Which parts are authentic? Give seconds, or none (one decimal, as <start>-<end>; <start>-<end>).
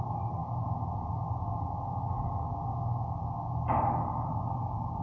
0.0-5.0